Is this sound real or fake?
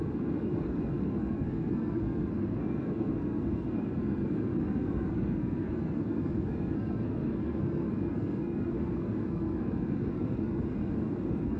fake